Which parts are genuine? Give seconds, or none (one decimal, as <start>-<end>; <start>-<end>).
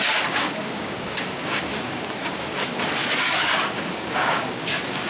none